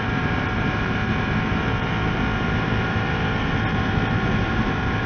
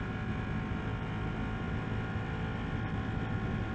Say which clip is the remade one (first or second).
first